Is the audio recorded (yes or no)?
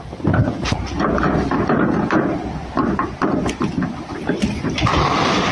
yes